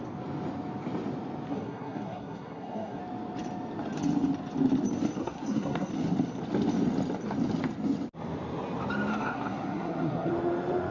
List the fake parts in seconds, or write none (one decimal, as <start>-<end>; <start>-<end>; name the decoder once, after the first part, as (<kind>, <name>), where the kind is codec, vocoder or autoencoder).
1.5-3.0 (codec, SNAC); 5.2-5.9; 9.1-10.3